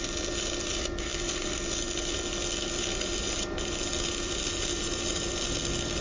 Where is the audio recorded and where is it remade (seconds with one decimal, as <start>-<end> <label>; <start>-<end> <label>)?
0.0-6.0 recorded